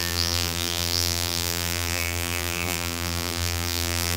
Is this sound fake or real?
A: fake